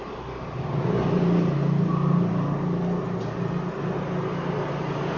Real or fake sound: real